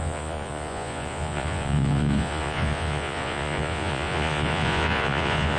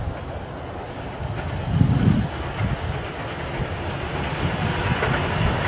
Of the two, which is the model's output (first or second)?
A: first